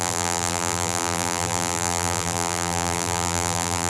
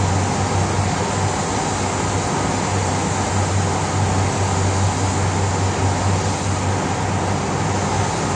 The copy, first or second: first